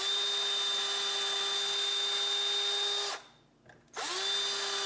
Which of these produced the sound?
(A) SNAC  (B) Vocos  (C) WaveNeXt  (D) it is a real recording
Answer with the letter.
D